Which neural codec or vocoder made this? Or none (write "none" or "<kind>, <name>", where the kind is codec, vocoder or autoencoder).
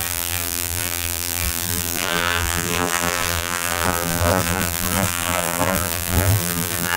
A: vocoder, BigVGAN v2